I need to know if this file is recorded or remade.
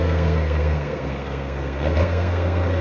remade